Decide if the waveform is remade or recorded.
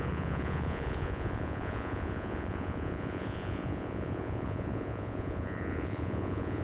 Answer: remade